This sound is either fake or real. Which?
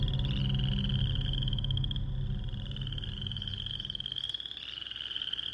real